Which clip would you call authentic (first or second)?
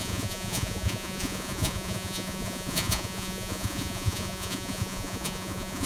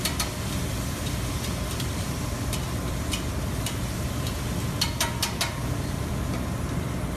second